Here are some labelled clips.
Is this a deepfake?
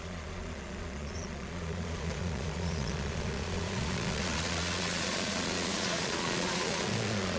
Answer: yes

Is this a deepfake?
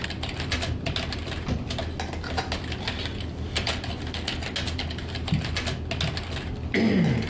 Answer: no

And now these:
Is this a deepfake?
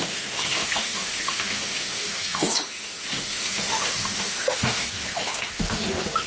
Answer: yes